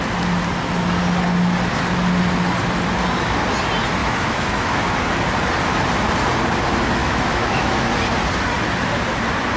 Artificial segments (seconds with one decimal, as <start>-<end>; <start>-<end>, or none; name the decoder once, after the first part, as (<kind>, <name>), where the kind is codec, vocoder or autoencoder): 4.0-4.8 (autoencoder, DAC-VAE); 7.0-7.8